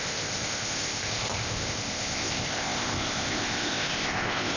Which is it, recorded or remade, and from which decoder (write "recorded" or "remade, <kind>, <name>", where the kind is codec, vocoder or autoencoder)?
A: remade, codec, ZipCodec